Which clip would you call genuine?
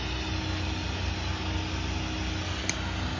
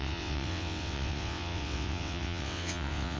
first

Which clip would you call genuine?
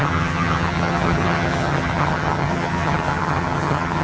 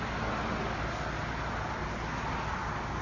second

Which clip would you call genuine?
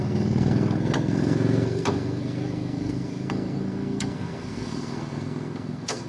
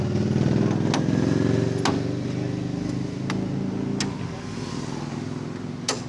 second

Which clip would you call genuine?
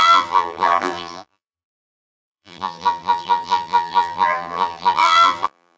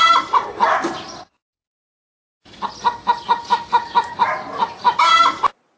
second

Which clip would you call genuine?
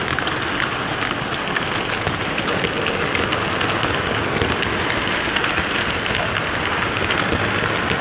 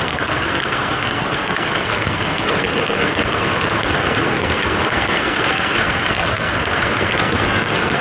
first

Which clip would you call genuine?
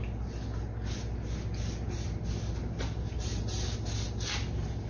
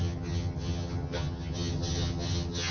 first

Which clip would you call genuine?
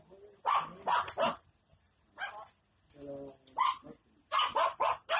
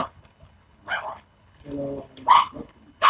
first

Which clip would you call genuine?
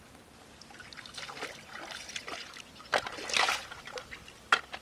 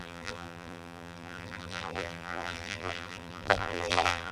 first